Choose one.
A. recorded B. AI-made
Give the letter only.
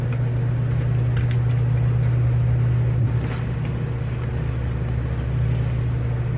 A